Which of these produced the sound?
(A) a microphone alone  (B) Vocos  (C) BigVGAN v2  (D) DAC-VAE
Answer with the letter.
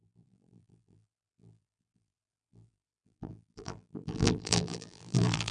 C